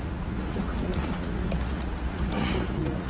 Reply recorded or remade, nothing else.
remade